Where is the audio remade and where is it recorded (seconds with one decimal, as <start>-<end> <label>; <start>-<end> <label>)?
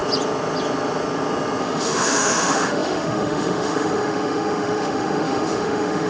0.0-1.6 recorded; 1.6-6.1 remade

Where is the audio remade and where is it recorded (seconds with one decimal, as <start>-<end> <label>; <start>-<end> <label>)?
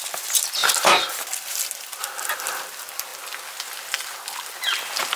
0.0-3.1 remade; 3.1-4.8 recorded; 4.8-5.2 remade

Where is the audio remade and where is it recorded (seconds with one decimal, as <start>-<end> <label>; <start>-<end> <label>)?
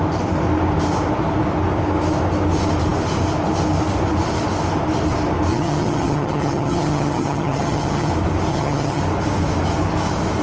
0.0-5.5 recorded; 5.5-8.1 remade; 8.1-8.5 recorded; 8.5-9.0 remade; 9.0-10.4 recorded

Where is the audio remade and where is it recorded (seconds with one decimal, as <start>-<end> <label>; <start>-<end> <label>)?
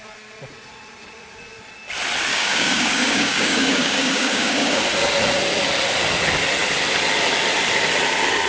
0.0-2.3 recorded; 2.3-4.8 remade; 4.8-8.5 recorded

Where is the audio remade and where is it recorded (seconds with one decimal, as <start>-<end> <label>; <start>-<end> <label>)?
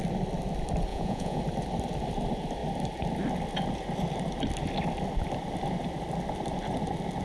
0.0-0.9 recorded; 0.9-1.4 remade; 1.4-7.2 recorded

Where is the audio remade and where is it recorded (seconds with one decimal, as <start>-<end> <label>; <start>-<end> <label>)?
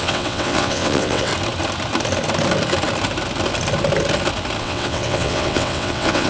0.0-1.3 remade; 1.3-4.6 recorded; 4.6-6.3 remade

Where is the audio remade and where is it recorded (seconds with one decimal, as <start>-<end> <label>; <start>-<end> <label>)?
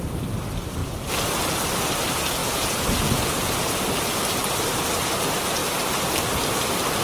0.0-2.4 recorded; 2.4-3.8 remade; 3.8-7.0 recorded